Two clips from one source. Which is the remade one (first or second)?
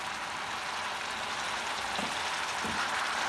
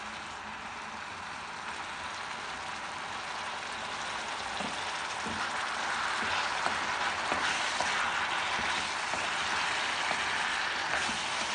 first